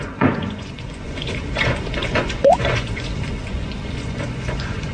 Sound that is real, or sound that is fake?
fake